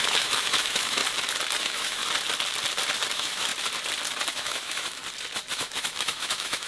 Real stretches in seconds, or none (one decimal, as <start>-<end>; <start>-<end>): 1.0-1.6; 2.0-3.1; 3.5-4.3; 5.0-5.5